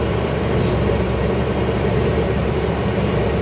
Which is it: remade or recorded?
remade